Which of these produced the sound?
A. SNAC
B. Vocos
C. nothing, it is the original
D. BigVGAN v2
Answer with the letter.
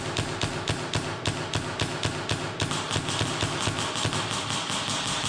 C